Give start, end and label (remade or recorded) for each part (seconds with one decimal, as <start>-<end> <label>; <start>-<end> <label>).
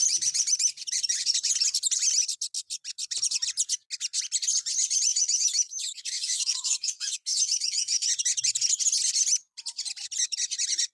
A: 0.0-5.1 recorded; 5.1-8.1 remade; 8.1-10.9 recorded